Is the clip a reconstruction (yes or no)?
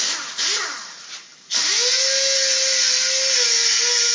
no